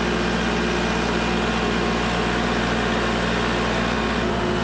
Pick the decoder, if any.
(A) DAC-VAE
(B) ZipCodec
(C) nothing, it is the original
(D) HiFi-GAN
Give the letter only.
C